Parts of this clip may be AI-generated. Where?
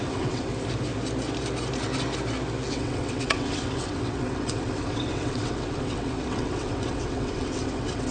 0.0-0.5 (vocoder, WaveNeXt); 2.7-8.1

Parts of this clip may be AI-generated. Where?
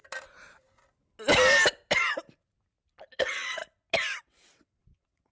3.2-3.6 (vocoder, WaveNeXt); 4.2-5.3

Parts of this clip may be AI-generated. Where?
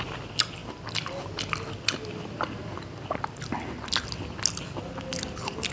none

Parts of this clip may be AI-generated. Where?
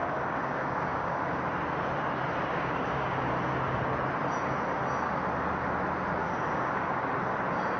0.0-1.4 (codec, DAC); 2.5-3.3; 6.2-7.1